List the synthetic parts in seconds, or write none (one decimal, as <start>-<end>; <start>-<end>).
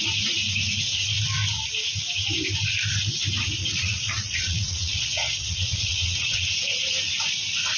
3.6-6.5